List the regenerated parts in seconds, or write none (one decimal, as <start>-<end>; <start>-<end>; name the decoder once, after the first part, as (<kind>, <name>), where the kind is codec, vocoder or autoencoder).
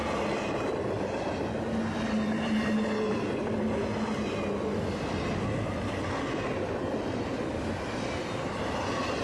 none